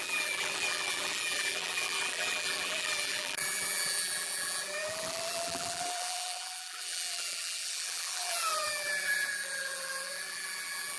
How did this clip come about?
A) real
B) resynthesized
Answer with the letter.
B